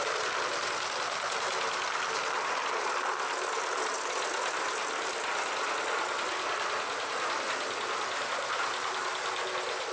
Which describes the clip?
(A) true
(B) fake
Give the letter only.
A